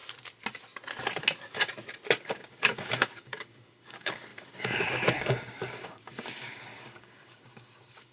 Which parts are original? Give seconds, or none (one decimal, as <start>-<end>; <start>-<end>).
0.0-2.2